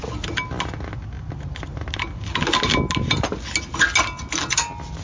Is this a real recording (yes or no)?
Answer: yes